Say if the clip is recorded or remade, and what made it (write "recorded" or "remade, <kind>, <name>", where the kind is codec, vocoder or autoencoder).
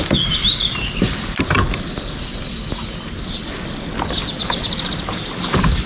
recorded